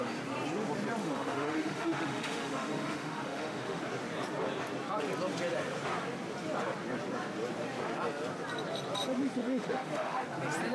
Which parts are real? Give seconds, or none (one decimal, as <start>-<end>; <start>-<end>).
0.0-1.0; 3.8-9.4; 10.2-10.7